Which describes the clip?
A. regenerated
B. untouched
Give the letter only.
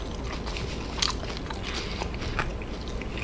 B